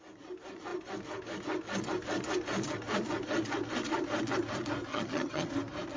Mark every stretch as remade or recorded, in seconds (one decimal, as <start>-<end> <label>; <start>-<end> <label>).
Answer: 0.0-4.9 recorded; 4.9-5.5 remade; 5.5-6.0 recorded